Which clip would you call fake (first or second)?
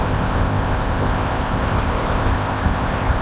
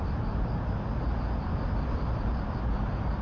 first